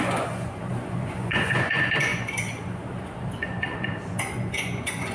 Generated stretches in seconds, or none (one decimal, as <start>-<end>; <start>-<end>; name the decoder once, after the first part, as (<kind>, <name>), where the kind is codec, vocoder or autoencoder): 0.0-5.1 (vocoder, Vocos)